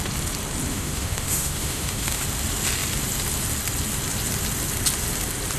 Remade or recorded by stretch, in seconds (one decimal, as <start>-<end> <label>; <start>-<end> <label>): 0.0-0.7 recorded; 0.7-2.2 remade; 2.2-5.6 recorded